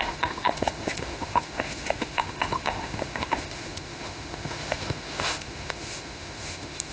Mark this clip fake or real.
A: fake